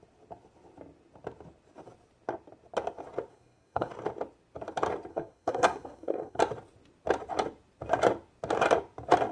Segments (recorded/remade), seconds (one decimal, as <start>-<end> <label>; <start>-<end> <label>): 0.0-3.3 recorded; 3.3-3.9 remade; 3.9-5.1 recorded; 5.1-6.4 remade; 6.4-9.3 recorded